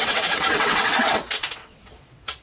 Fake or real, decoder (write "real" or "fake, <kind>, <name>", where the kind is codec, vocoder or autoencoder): fake, vocoder, WaveNeXt